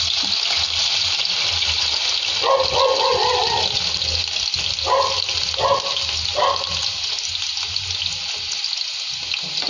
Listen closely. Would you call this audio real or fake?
real